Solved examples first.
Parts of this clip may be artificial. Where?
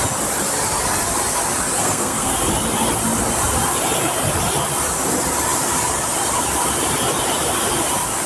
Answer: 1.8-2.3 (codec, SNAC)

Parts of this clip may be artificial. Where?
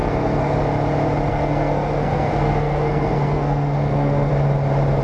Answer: 0.0-0.6 (codec, SNAC); 1.3-4.3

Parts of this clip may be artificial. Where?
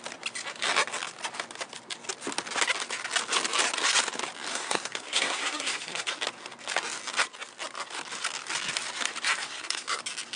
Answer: 4.5-6.1 (codec, SNAC); 9.4-10.0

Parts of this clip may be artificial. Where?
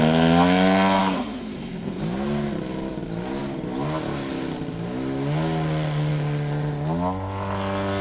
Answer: 1.0-2.0 (codec, SNAC)